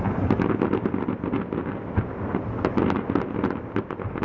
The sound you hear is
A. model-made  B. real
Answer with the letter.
B